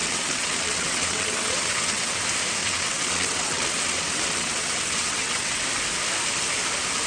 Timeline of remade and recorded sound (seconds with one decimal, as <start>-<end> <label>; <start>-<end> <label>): 0.0-2.2 remade; 2.2-2.6 recorded; 2.6-5.6 remade; 5.6-7.1 recorded